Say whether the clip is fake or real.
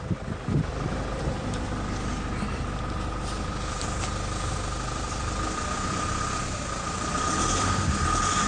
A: fake